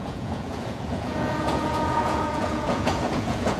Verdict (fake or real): fake